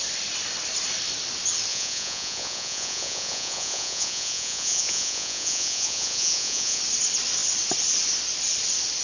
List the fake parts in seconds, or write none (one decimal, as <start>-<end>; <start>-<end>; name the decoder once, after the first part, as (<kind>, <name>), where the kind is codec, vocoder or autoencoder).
1.7-6.8 (vocoder, Vocos)